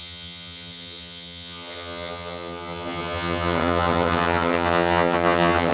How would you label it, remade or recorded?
remade